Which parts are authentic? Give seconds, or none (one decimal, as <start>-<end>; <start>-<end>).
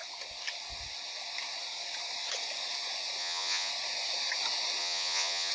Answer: 0.0-3.2; 3.7-4.8